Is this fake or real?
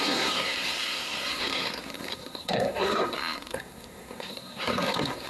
fake